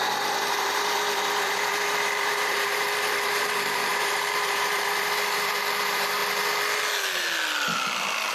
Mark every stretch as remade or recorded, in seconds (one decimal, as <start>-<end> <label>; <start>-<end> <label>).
0.0-6.2 remade; 6.2-8.3 recorded